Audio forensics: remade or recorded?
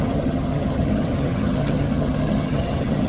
remade